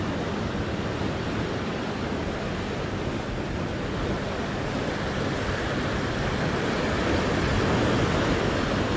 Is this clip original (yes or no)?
yes